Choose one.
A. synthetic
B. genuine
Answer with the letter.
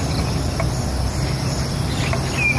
B